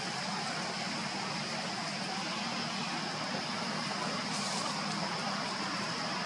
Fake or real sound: real